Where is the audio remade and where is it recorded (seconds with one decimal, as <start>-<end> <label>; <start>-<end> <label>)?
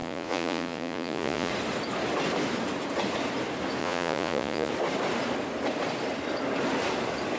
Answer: 0.0-1.5 remade; 1.5-3.8 recorded; 3.8-4.7 remade; 4.7-7.4 recorded